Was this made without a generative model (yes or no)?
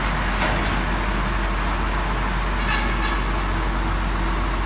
yes